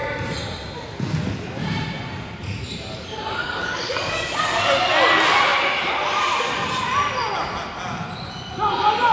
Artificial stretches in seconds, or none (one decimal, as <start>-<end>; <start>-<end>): 3.4-4.4